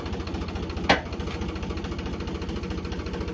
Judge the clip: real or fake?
real